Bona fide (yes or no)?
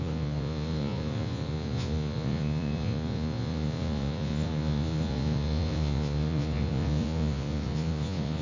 no